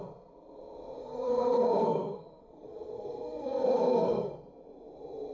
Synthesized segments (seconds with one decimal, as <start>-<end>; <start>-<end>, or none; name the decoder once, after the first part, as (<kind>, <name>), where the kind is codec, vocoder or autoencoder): 1.0-4.2 (codec, SNAC)